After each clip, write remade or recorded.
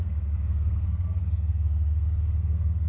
remade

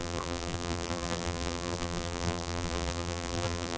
remade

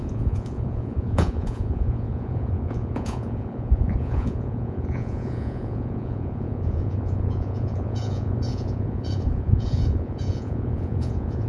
remade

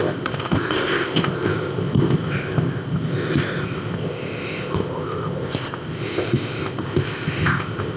remade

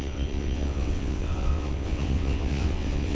remade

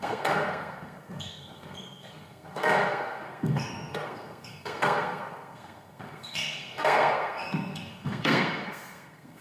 remade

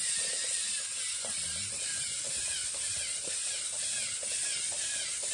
recorded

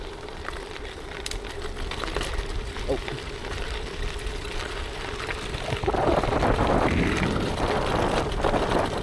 remade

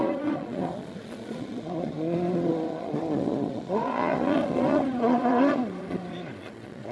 remade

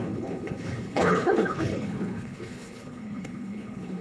remade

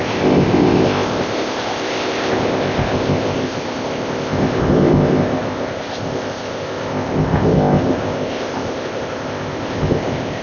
remade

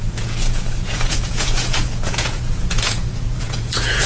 remade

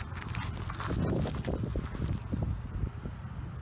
recorded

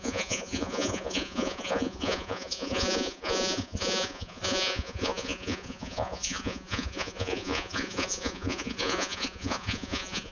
remade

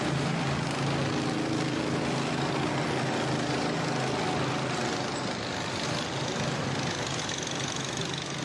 recorded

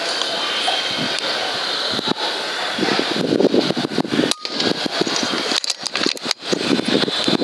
recorded